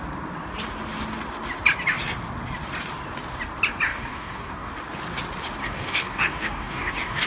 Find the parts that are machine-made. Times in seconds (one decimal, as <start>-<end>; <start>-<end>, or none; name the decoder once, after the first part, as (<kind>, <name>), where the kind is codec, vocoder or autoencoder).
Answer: 3.9-4.7 (codec, DAC); 5.6-7.3